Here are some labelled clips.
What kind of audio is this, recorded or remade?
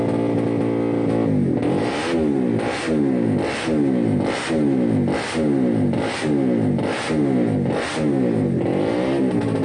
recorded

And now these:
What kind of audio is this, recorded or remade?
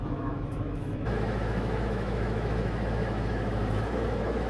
remade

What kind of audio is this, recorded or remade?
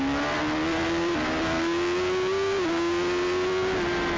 recorded